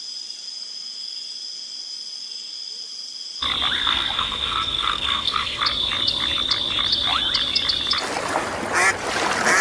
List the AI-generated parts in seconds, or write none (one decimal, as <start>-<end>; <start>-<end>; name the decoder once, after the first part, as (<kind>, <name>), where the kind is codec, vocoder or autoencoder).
3.8-5.6 (codec, SNAC)